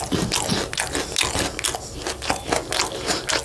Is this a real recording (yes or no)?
yes